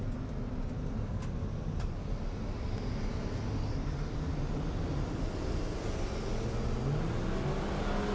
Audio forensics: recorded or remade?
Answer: recorded